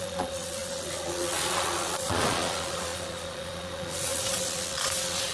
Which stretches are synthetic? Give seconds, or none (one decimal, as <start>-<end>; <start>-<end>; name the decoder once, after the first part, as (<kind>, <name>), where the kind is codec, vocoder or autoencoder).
0.0-5.3 (vocoder, Vocos)